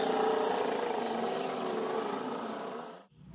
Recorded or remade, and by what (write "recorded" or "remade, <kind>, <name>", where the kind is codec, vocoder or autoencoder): recorded